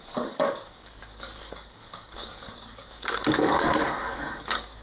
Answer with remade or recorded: remade